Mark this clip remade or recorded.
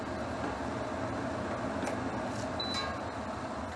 recorded